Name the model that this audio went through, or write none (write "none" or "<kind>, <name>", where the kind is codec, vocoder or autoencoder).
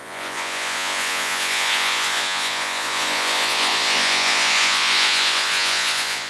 vocoder, Vocos